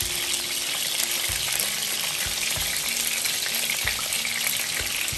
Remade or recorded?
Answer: recorded